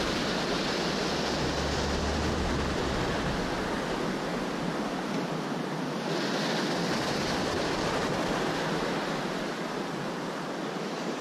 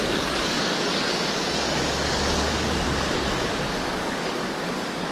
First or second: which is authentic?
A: first